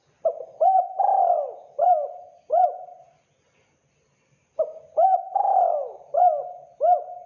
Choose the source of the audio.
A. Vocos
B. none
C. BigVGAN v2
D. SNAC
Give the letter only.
B